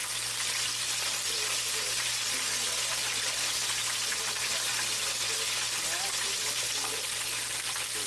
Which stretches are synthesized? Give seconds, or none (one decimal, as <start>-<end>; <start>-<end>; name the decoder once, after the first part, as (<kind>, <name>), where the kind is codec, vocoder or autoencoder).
none